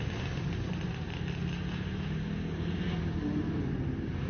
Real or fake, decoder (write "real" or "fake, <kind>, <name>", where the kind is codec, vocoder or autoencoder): real